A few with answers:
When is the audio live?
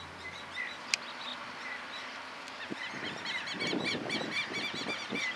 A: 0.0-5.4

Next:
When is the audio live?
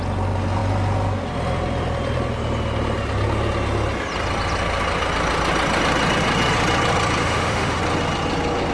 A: 0.0-7.2; 7.8-8.7